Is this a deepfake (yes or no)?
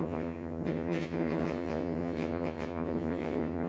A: yes